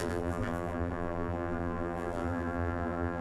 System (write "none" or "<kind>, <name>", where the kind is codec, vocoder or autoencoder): vocoder, BigVGAN v2